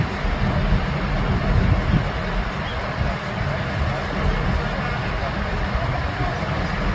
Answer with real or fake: real